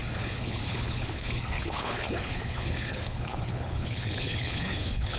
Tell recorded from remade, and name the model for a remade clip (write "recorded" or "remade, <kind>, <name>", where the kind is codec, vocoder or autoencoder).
remade, codec, HILCodec